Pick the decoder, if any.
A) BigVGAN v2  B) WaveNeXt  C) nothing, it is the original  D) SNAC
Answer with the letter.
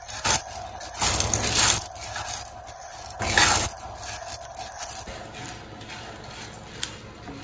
C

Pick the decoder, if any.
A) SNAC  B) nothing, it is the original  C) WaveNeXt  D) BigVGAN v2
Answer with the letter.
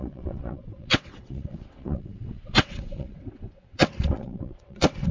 C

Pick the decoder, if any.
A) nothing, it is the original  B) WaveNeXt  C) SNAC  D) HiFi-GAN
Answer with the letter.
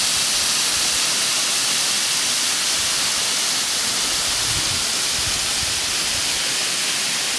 A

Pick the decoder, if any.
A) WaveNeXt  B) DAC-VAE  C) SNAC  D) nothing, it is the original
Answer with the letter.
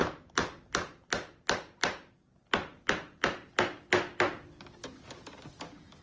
D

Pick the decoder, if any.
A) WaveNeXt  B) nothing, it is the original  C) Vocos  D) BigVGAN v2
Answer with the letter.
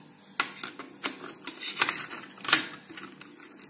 B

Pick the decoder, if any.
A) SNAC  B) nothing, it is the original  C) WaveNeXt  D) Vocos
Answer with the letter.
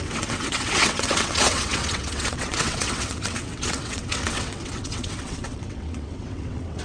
C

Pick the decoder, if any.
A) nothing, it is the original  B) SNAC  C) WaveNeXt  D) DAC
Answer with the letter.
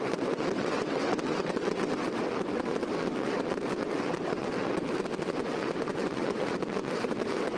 C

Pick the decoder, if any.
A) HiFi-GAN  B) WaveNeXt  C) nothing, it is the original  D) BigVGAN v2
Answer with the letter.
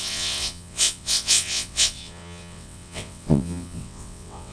B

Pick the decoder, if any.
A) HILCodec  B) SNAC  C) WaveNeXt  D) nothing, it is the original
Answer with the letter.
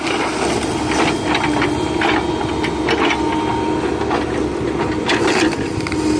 D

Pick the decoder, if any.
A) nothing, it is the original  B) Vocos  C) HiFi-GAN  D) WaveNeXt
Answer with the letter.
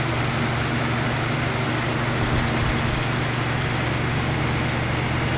A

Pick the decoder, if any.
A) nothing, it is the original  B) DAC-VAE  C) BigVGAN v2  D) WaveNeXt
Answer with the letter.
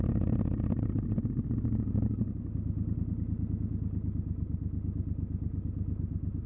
A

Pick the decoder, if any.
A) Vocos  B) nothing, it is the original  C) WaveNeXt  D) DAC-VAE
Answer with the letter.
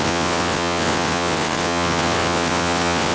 C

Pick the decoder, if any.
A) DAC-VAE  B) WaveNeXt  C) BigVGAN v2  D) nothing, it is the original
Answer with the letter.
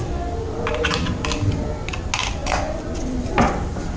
D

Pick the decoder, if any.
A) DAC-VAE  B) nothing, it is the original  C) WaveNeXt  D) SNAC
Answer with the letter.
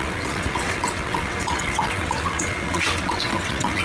C